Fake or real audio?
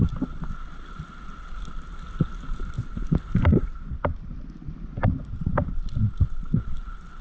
real